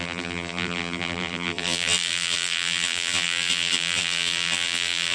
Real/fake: fake